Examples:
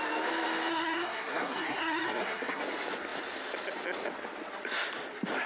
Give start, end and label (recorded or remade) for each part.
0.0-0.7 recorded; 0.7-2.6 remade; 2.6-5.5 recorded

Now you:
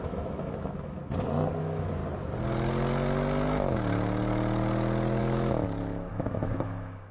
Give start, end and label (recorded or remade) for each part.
0.0-1.0 remade; 1.0-1.6 recorded; 1.6-2.0 remade; 2.0-5.2 recorded; 5.2-7.1 remade

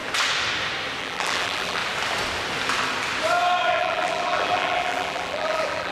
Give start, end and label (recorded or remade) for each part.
0.0-1.0 recorded; 1.0-1.8 remade; 1.8-3.7 recorded; 3.7-5.9 remade

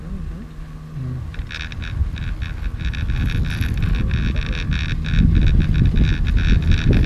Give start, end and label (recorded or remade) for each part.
0.0-7.1 recorded

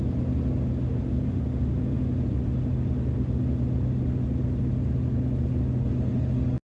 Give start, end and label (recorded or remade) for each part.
0.0-6.6 recorded

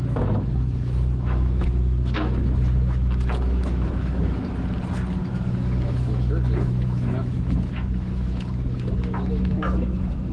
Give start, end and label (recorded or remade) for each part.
0.0-4.4 remade; 4.4-5.3 recorded; 5.3-10.3 remade

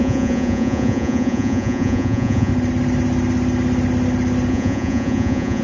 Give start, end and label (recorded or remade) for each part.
0.0-2.5 remade; 2.5-4.5 recorded; 4.5-5.6 remade